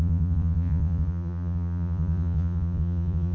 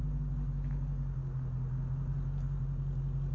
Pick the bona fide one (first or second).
second